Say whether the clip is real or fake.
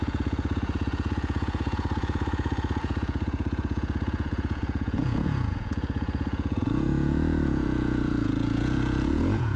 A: fake